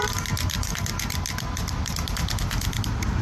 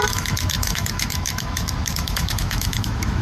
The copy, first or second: second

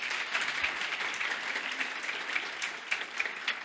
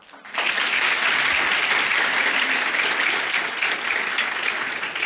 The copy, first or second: first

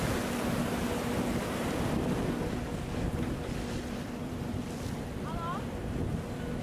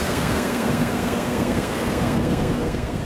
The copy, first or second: second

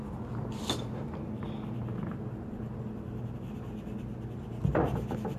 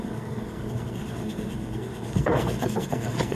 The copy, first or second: second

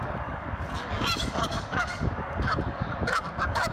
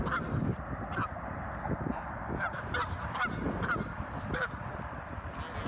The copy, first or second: first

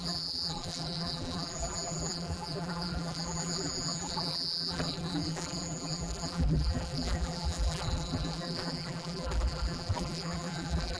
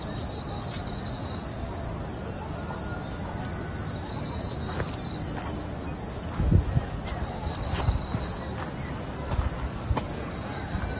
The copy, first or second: first